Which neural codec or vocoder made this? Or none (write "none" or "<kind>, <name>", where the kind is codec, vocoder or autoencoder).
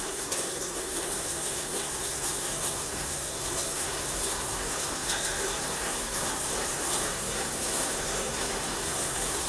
codec, SNAC